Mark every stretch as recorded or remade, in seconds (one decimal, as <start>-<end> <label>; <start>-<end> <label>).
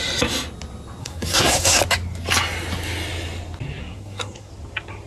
0.0-1.0 recorded; 1.0-1.8 remade; 1.8-3.8 recorded; 3.8-4.5 remade; 4.5-5.1 recorded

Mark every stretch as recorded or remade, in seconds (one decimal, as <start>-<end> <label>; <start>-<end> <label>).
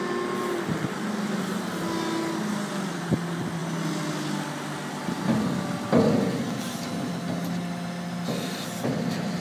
0.0-9.4 recorded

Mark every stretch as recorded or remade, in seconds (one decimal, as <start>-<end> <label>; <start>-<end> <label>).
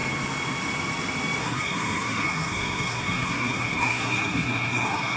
0.0-1.4 recorded; 1.4-5.2 remade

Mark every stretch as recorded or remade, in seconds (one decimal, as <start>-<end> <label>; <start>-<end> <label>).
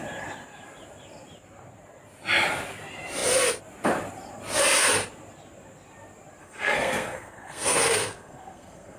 0.0-6.4 recorded; 6.4-9.0 remade